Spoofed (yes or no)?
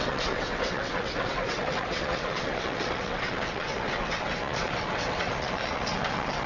yes